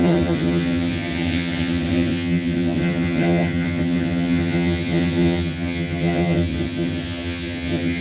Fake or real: fake